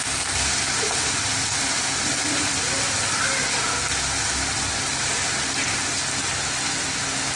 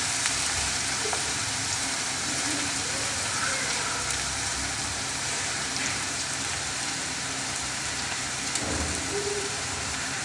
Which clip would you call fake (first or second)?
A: second